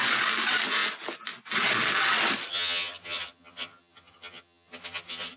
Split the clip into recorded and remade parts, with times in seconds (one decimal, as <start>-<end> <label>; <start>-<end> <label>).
0.0-2.5 recorded; 2.5-5.4 remade

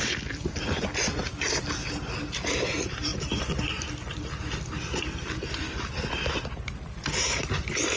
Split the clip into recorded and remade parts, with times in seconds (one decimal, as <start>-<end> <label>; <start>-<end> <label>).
0.0-8.0 recorded